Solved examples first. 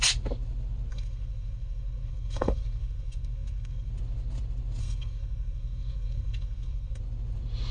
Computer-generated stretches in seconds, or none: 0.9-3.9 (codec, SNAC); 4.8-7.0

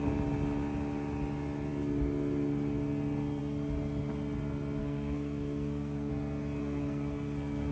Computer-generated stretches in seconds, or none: 4.8-6.1 (codec, SNAC); 6.6-7.7